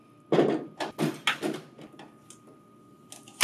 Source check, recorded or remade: recorded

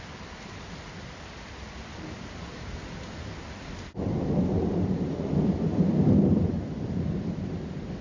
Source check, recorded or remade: remade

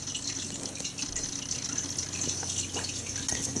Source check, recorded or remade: recorded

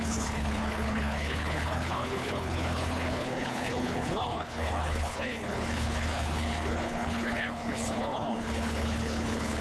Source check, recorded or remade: remade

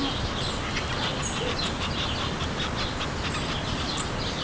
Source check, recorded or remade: recorded